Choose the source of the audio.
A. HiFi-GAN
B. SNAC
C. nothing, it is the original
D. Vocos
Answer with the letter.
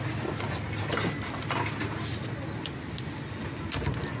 C